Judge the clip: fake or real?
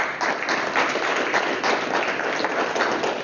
real